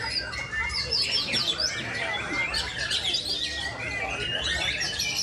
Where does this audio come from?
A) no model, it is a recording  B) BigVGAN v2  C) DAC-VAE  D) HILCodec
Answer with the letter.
A